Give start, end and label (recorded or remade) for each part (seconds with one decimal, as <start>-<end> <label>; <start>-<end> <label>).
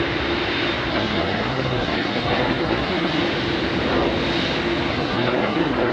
0.0-0.9 recorded; 0.9-3.2 remade; 3.2-4.9 recorded; 4.9-5.9 remade